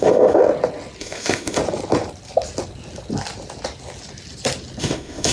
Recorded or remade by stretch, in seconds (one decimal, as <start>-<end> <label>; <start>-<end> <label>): 0.0-0.4 remade; 0.4-1.0 recorded; 1.0-1.6 remade; 1.6-4.8 recorded; 4.8-5.3 remade